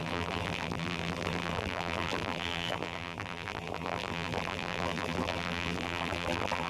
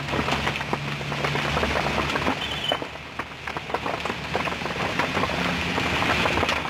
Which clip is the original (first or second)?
second